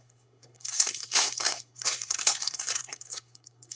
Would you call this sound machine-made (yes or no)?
yes